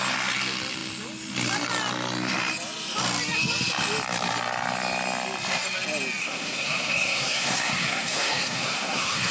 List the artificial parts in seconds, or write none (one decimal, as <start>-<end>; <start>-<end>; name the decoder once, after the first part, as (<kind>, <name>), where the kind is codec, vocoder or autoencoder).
6.2-9.3 (codec, SNAC)